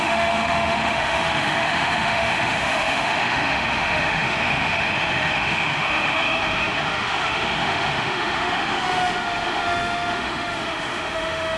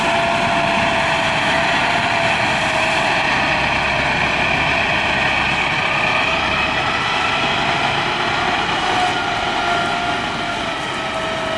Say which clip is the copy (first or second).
first